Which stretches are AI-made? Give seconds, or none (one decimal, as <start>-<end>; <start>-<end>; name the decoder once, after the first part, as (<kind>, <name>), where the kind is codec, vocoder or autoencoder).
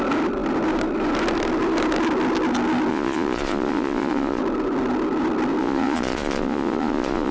2.9-4.4 (vocoder, Vocos); 5.6-7.3